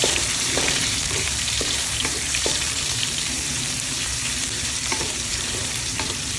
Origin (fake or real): fake